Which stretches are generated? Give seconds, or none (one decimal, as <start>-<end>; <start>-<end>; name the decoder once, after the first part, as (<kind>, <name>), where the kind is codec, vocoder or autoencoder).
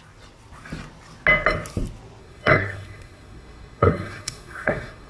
2.2-5.1 (codec, SNAC)